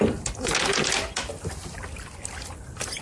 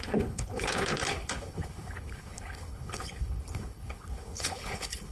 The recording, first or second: first